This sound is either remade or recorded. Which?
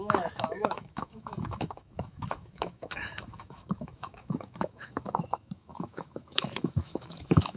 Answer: remade